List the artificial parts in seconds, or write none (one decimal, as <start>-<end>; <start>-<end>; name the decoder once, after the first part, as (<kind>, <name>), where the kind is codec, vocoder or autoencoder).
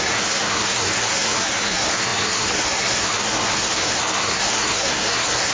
0.0-5.5 (codec, SNAC)